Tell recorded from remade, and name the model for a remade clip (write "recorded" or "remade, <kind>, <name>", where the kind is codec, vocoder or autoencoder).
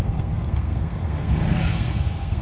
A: remade, codec, SNAC